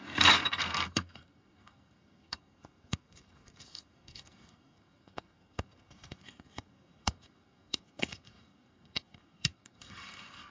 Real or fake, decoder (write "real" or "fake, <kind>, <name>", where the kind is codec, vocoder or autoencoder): fake, codec, SNAC